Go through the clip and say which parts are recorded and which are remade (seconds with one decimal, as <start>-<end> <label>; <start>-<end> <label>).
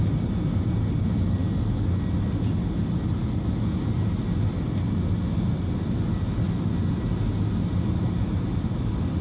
0.0-9.2 recorded